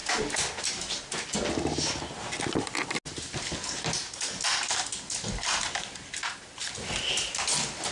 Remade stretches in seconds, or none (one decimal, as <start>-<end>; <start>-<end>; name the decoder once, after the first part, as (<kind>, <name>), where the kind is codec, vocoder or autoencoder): none